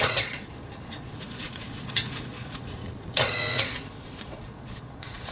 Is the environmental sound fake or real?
fake